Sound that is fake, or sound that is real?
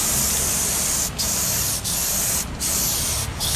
real